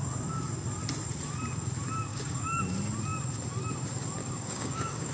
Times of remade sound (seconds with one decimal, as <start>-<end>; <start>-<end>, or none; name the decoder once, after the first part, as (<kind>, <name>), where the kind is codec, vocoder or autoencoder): 2.1-2.6 (codec, DAC); 4.2-5.1